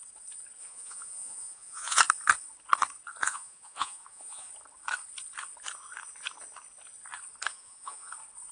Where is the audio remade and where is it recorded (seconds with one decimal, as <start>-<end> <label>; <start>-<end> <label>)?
0.0-0.6 recorded; 0.6-2.0 remade; 2.0-3.2 recorded; 3.2-4.5 remade; 4.5-7.5 recorded; 7.5-8.1 remade; 8.1-8.5 recorded